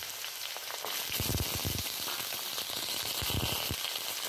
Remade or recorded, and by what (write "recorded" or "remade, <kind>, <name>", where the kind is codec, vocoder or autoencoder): recorded